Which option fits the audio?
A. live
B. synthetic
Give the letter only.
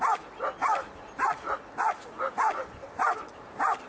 A